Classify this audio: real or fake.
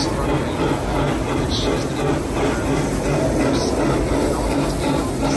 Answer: real